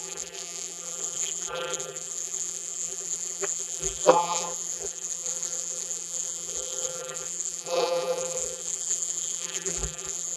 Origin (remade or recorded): remade